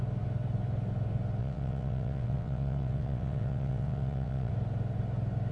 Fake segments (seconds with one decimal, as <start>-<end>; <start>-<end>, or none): 1.4-4.5